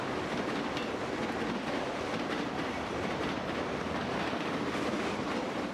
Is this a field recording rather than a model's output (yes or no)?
yes